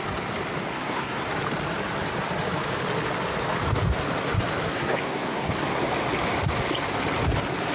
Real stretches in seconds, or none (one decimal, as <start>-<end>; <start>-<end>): 0.0-0.7; 1.3-4.7; 5.8-7.7